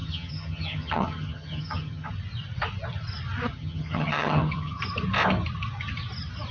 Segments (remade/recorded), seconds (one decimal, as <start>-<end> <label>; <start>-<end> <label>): 0.0-2.1 remade; 2.1-3.5 recorded; 3.5-4.8 remade; 4.8-6.5 recorded